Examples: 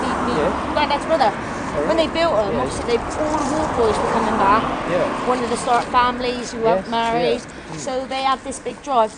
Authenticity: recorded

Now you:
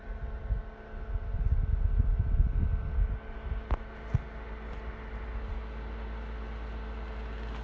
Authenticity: recorded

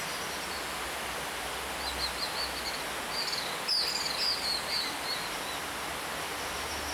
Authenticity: recorded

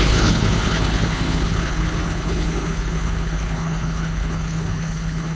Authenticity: remade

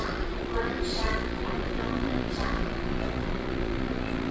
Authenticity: remade